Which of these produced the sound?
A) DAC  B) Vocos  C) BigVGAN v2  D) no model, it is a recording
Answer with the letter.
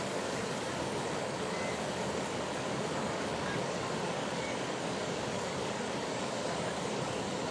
A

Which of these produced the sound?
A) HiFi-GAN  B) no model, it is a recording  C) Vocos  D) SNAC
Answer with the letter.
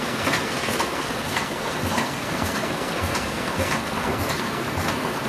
D